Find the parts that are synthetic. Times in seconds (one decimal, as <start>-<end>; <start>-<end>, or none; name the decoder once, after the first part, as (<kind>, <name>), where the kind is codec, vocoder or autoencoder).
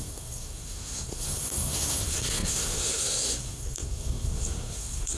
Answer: 0.0-5.2 (codec, SNAC)